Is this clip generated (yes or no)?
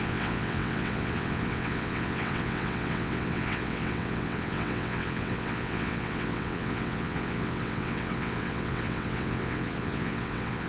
yes